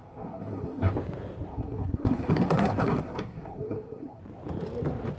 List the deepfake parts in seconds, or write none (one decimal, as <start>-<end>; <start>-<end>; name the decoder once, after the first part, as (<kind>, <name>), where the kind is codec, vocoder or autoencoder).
0.0-0.9 (codec, SNAC); 1.5-4.2